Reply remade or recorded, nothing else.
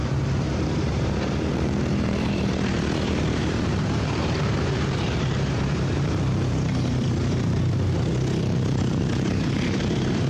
remade